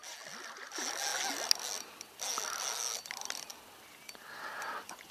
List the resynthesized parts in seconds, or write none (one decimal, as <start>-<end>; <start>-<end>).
none